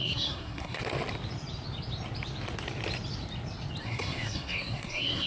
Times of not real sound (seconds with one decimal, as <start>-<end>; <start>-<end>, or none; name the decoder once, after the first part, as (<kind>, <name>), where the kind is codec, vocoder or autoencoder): 0.0-0.8 (codec, SNAC); 3.8-5.3